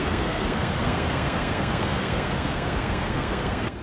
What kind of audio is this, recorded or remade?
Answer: remade